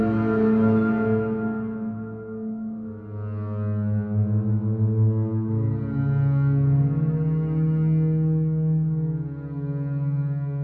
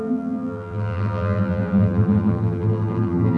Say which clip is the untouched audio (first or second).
first